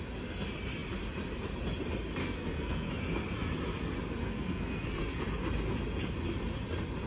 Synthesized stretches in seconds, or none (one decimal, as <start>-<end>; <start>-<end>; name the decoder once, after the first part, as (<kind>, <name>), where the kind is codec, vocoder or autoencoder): 2.2-2.9 (codec, SNAC); 4.2-5.2